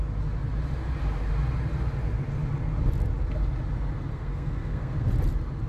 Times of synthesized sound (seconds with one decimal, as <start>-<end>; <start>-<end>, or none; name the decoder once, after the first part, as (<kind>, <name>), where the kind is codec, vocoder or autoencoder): 4.1-5.1 (codec, SNAC)